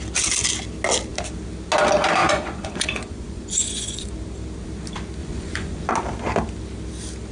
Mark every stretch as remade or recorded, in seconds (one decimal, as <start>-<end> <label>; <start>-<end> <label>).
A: 0.0-2.2 recorded; 2.2-4.1 remade; 4.1-5.2 recorded; 5.2-5.9 remade; 5.9-7.3 recorded